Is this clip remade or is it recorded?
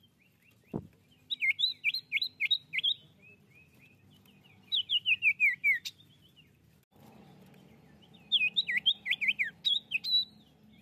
recorded